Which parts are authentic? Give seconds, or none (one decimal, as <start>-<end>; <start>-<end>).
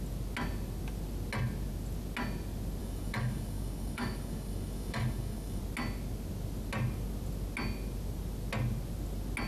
0.0-2.8; 5.6-9.5